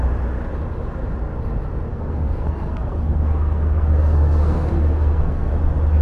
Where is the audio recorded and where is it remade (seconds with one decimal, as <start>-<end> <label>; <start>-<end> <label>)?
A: 0.0-1.9 recorded; 1.9-5.5 remade; 5.5-6.0 recorded